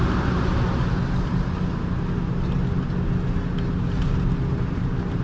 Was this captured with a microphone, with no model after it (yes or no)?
yes